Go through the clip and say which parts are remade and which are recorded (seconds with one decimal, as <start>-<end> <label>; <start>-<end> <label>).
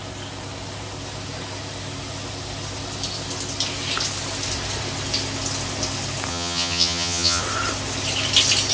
0.0-6.3 recorded; 6.3-7.4 remade; 7.4-8.7 recorded